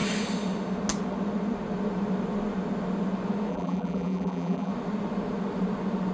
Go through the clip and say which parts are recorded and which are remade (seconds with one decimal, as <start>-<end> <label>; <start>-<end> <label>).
0.0-3.5 recorded; 3.5-4.7 remade; 4.7-6.1 recorded